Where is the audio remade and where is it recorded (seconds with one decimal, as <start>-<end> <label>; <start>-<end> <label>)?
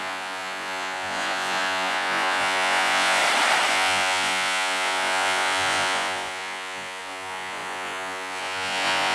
0.0-3.2 remade; 3.2-3.7 recorded; 3.7-9.1 remade